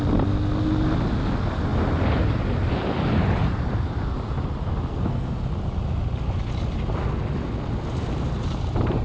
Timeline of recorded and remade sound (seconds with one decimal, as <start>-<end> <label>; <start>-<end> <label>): 0.0-4.9 recorded; 4.9-5.4 remade; 5.4-9.0 recorded